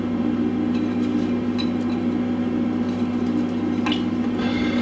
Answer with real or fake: real